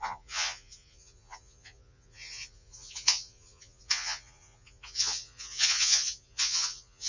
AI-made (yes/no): yes